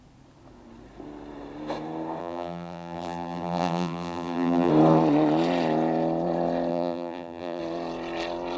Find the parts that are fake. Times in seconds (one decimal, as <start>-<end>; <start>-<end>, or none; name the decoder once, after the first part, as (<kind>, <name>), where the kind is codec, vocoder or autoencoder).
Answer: 2.2-4.7 (vocoder, BigVGAN v2); 6.7-7.6